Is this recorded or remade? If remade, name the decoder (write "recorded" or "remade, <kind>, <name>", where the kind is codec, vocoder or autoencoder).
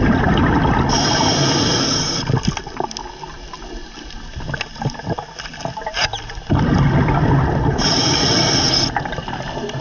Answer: recorded